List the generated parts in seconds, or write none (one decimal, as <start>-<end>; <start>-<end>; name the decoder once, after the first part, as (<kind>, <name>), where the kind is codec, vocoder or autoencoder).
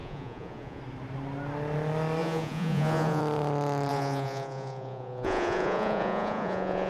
0.0-0.8 (vocoder, Vocos); 2.2-3.2; 3.9-6.9